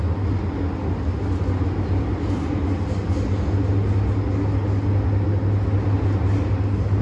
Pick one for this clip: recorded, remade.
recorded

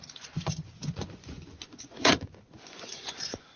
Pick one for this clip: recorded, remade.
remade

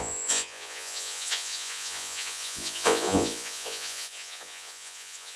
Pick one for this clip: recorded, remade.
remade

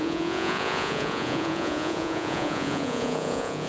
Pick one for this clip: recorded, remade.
remade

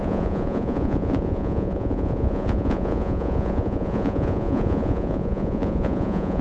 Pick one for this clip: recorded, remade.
remade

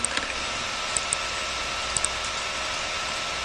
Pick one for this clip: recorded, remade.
recorded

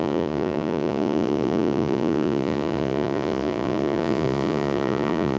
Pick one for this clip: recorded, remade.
remade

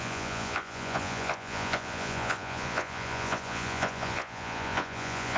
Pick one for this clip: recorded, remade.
remade